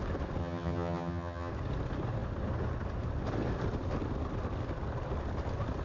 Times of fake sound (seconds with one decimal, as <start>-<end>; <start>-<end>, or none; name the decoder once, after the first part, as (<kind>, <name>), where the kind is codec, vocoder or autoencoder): 0.4-1.5 (vocoder, HiFi-GAN)